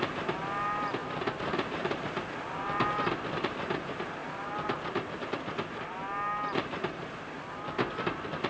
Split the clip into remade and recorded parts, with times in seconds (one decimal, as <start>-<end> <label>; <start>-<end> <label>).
0.0-1.0 recorded; 1.0-2.3 remade; 2.3-8.5 recorded